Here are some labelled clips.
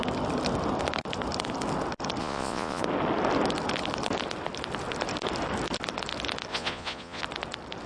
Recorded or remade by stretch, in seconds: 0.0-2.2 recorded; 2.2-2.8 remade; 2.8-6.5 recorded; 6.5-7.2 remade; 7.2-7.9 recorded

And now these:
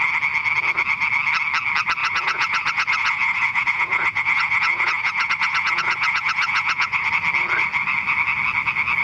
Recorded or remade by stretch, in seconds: 0.0-2.0 recorded; 2.0-7.1 remade; 7.1-9.0 recorded

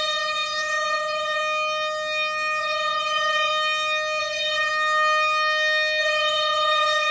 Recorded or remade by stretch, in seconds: 0.0-1.4 remade; 1.4-2.6 recorded; 2.6-3.5 remade; 3.5-4.2 recorded; 4.2-4.7 remade; 4.7-6.0 recorded; 6.0-7.1 remade

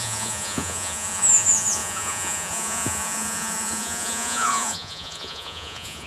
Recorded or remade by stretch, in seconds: 0.0-6.1 remade

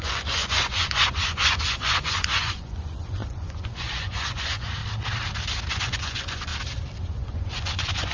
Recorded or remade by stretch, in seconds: 0.0-4.8 remade; 4.8-5.7 recorded; 5.7-6.5 remade; 6.5-7.0 recorded; 7.0-8.1 remade

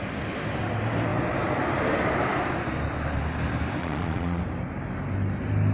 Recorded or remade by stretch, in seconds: 0.0-3.8 recorded; 3.8-4.4 remade; 4.4-5.7 recorded

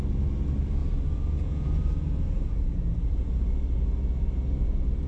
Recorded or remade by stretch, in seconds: 0.0-0.8 recorded; 0.8-3.5 remade; 3.5-5.1 recorded

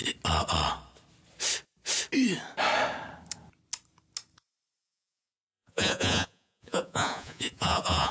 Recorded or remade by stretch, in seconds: 0.0-4.8 recorded; 4.8-8.1 remade